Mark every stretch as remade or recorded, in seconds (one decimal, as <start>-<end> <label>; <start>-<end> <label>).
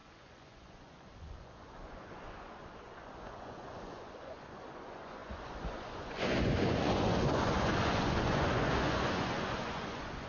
0.0-10.3 remade